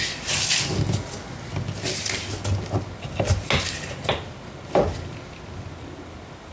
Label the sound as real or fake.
real